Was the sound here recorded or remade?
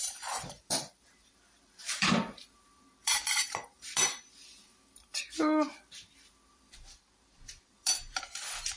remade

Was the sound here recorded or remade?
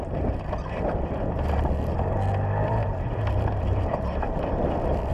remade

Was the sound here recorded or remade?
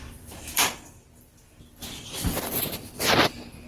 remade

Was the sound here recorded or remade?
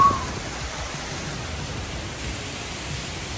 recorded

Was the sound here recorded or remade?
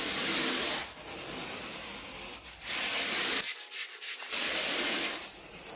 recorded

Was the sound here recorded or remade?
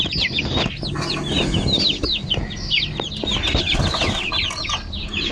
recorded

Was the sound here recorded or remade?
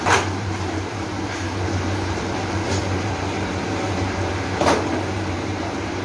remade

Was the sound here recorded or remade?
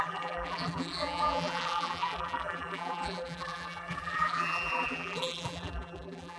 remade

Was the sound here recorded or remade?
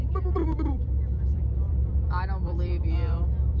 remade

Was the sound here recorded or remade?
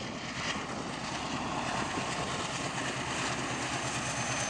recorded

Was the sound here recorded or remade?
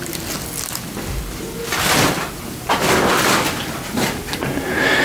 recorded